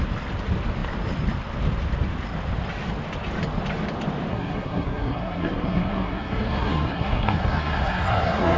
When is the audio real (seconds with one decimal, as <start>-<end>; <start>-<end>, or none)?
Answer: 0.0-4.3